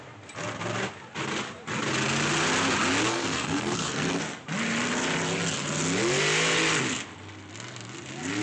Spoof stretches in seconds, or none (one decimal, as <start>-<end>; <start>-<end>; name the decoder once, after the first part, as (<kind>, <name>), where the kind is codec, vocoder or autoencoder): 3.1-4.2 (codec, SNAC)